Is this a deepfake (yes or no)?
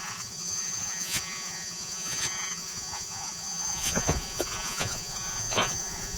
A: yes